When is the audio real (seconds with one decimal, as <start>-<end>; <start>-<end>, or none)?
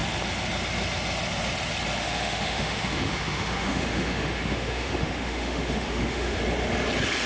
0.0-2.0; 6.4-7.3